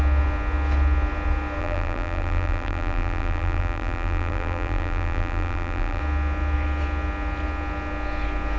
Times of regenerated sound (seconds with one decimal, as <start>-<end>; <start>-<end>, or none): 1.6-6.0